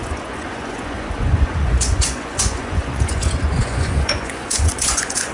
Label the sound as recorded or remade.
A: remade